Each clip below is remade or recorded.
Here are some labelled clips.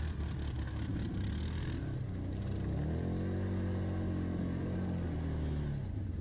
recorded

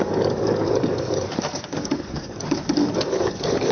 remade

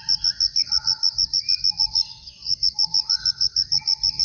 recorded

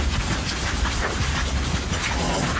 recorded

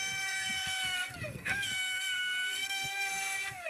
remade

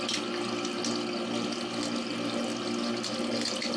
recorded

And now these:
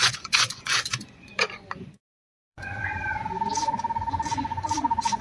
remade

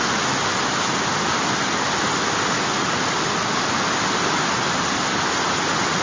recorded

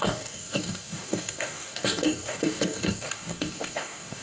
remade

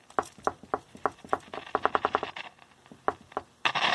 recorded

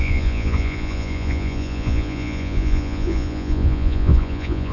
remade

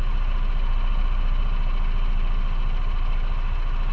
recorded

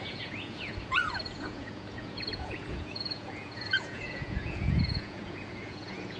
remade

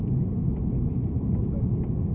recorded